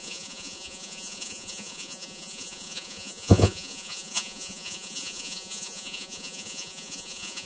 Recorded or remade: remade